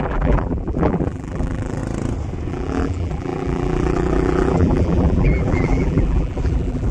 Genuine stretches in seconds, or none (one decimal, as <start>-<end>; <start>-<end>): 1.8-2.5